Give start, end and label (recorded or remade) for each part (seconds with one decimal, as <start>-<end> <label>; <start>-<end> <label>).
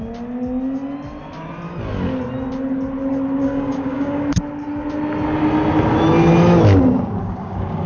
0.0-3.4 recorded; 3.4-4.2 remade; 4.2-7.2 recorded; 7.2-7.9 remade